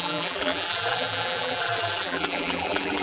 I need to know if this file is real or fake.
fake